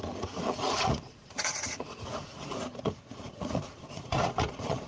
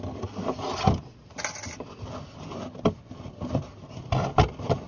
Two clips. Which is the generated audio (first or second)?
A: first